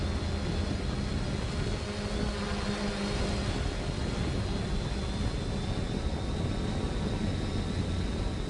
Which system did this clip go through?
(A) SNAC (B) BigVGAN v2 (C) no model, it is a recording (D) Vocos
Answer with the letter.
C